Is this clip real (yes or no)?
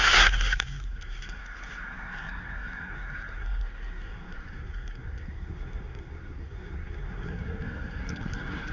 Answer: no